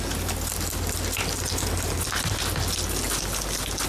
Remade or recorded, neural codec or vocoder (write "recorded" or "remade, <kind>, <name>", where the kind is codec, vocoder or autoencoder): recorded